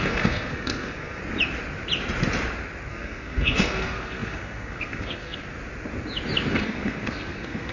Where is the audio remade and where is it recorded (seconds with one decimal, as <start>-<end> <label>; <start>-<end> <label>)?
0.0-1.2 remade; 1.2-2.9 recorded; 2.9-5.4 remade; 5.4-6.5 recorded; 6.5-7.7 remade